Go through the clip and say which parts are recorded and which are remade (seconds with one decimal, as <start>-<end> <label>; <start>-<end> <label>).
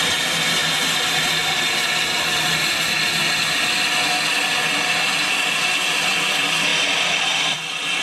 0.0-8.0 recorded